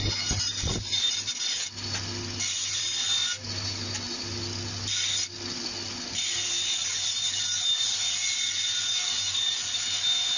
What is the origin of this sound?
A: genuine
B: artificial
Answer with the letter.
A